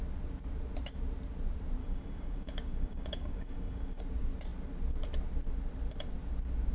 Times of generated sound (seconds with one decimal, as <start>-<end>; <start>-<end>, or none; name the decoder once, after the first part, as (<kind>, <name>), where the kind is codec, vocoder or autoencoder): 1.8-4.0 (codec, DAC)